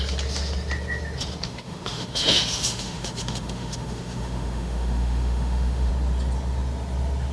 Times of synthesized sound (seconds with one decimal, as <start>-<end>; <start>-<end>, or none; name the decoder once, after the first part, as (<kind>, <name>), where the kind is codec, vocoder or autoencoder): 1.5-5.9 (autoencoder, DAC-VAE)

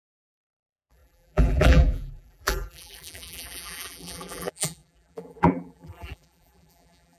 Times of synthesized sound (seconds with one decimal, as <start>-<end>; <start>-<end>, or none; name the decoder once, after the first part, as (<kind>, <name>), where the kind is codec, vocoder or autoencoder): 0.0-7.2 (vocoder, BigVGAN v2)

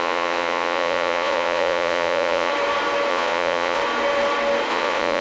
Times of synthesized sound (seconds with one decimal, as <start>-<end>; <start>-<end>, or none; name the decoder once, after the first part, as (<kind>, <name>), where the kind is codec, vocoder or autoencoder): 0.0-2.5 (vocoder, Vocos); 3.1-3.8; 4.7-5.2

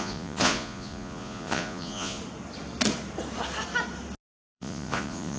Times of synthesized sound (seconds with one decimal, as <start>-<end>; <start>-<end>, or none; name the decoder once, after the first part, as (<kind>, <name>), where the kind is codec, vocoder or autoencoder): 0.0-2.2 (vocoder, Vocos); 4.3-5.4

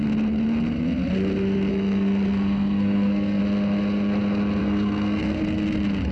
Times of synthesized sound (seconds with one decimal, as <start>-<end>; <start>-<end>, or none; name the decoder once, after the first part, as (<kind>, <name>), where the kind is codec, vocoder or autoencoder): 1.7-3.4 (codec, SNAC); 4.6-5.4